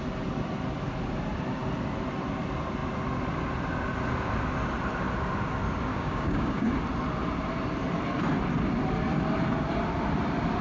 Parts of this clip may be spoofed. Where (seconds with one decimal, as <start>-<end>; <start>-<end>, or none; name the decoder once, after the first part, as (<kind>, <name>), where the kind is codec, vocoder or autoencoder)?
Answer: 5.9-6.7 (codec, DAC)